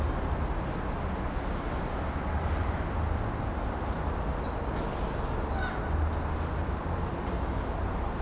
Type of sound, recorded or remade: recorded